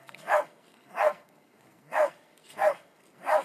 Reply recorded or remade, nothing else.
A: remade